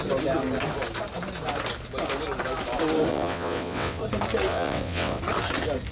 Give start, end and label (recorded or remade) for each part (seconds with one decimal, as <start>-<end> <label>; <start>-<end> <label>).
0.0-3.1 recorded; 3.1-4.0 remade; 4.0-4.5 recorded; 4.5-5.2 remade; 5.2-5.9 recorded